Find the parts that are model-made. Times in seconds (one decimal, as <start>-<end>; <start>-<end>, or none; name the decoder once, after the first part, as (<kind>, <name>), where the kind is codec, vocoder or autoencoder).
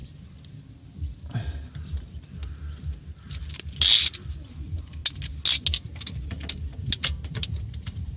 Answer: 1.3-2.4 (vocoder, BigVGAN v2); 4.5-5.0; 7.3-8.2